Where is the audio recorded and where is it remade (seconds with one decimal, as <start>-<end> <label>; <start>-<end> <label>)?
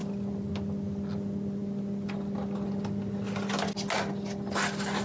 0.0-5.0 recorded